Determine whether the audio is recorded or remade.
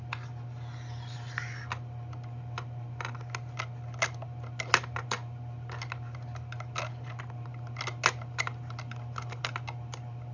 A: recorded